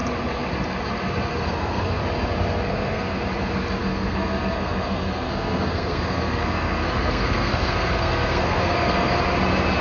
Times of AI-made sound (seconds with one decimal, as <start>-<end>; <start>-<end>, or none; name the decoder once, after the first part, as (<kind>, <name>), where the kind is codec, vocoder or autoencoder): 1.3-2.0 (codec, SNAC); 2.7-3.2; 3.8-9.1